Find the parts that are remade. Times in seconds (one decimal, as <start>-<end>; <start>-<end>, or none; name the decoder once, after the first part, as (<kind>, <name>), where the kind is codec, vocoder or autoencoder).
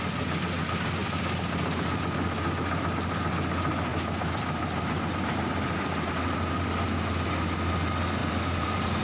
8.2-9.0 (vocoder, BigVGAN v2)